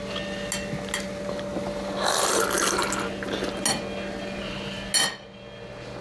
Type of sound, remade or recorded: recorded